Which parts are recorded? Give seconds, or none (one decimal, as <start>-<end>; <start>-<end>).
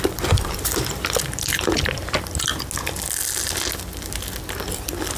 2.5-4.4